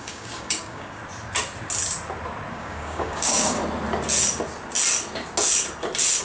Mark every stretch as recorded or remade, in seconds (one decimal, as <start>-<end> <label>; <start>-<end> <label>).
0.0-1.0 remade; 1.0-2.5 recorded; 2.5-3.6 remade; 3.6-6.2 recorded